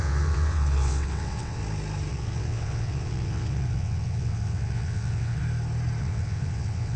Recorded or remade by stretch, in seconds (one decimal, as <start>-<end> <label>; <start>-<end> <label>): 0.0-1.6 remade; 1.6-2.1 recorded; 2.1-5.4 remade; 5.4-6.0 recorded; 6.0-7.0 remade